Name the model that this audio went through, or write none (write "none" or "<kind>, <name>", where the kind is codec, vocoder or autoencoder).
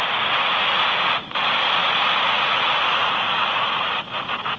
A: vocoder, Vocos